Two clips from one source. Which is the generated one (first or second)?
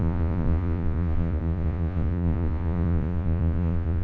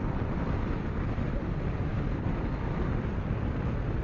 first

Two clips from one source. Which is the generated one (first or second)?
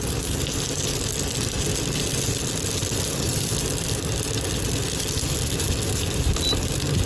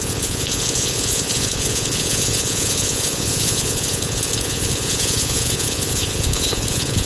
second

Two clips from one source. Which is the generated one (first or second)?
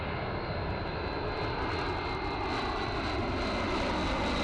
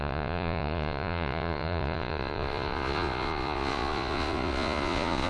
second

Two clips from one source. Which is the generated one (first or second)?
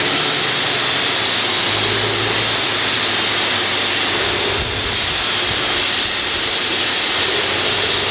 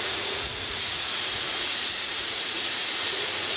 second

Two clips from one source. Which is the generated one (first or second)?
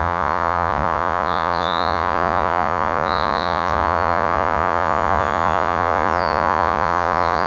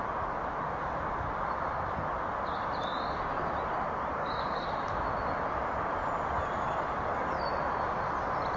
first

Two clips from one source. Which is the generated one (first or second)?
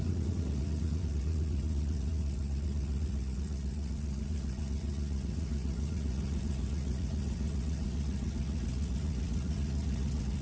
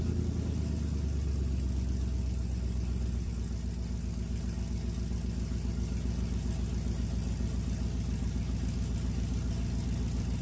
first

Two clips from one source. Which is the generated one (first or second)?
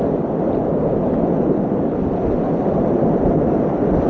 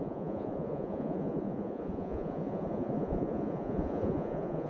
second